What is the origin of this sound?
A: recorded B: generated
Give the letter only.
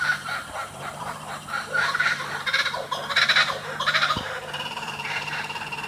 B